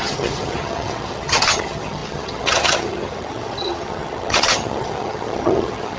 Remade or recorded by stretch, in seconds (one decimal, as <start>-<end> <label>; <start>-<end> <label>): 0.0-6.0 remade